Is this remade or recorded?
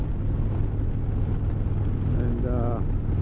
recorded